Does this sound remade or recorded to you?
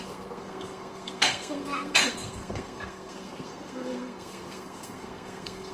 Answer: remade